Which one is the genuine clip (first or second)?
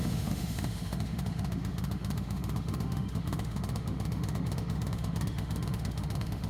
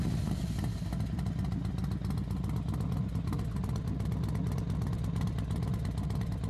second